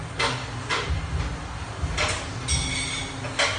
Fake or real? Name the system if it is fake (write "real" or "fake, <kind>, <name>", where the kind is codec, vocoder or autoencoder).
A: real